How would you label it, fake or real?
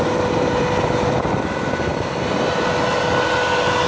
real